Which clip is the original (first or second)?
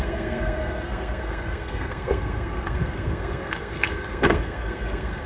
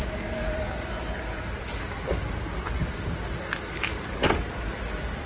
second